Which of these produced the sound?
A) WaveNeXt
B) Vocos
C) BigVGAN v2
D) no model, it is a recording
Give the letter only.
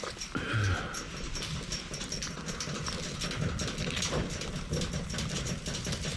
D